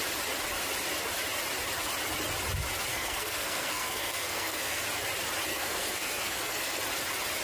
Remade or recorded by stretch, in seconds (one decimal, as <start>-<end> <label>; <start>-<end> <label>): 0.0-2.9 recorded; 2.9-4.8 remade; 4.8-5.5 recorded; 5.5-6.8 remade; 6.8-7.4 recorded